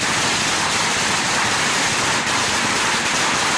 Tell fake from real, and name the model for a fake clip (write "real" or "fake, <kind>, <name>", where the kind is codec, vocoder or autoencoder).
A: real